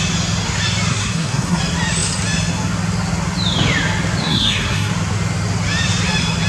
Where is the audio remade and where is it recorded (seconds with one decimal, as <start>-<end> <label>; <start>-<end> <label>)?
0.0-0.9 recorded; 0.9-1.6 remade; 1.6-4.2 recorded; 4.2-4.9 remade; 4.9-6.5 recorded